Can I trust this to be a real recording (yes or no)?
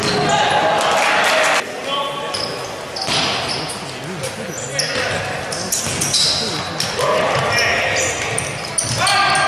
yes